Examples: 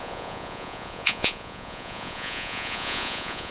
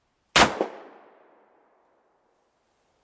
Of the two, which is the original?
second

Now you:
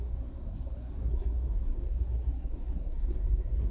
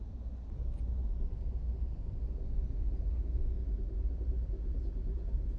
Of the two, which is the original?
second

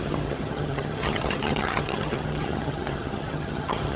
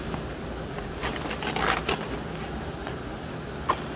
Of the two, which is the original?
second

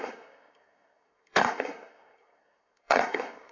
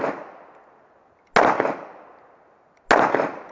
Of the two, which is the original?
second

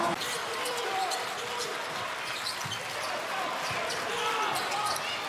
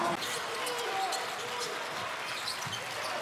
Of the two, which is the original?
second